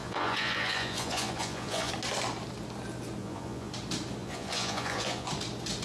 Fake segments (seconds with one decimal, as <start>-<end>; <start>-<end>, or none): 0.0-1.9; 3.2-3.7; 4.2-5.3